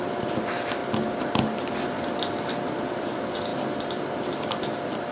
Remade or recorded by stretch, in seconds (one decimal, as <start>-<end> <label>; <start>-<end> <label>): 0.0-5.1 recorded